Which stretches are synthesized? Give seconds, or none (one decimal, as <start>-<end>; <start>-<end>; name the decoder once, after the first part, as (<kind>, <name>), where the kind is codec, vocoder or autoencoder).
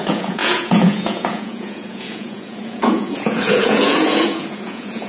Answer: 0.0-5.1 (vocoder, Vocos)